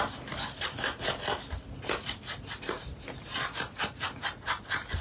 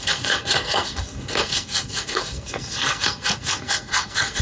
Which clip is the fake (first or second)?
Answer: second